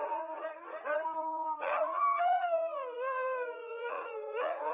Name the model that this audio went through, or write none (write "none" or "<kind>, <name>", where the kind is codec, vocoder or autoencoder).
vocoder, Vocos